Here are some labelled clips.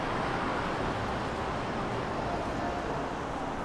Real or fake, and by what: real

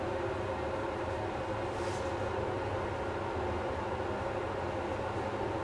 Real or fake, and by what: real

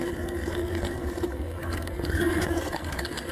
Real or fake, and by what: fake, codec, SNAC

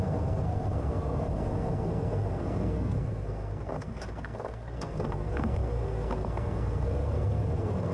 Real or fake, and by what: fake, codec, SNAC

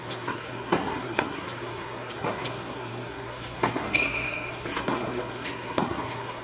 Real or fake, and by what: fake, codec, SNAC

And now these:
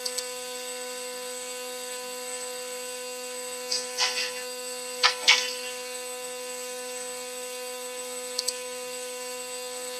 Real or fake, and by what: fake, codec, SNAC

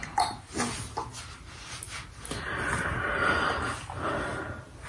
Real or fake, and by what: real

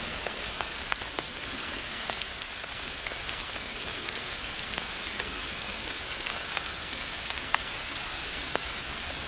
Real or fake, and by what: fake, codec, SNAC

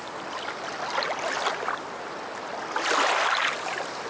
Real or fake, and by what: real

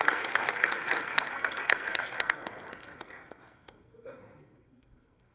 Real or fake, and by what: fake, codec, SNAC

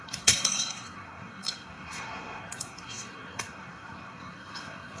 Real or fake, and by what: fake, codec, SNAC